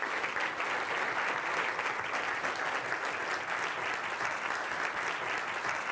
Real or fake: real